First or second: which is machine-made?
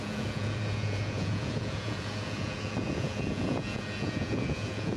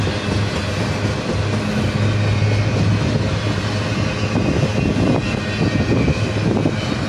first